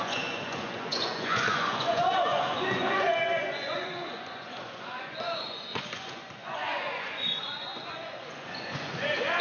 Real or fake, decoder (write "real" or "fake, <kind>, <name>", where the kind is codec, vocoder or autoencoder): fake, vocoder, Vocos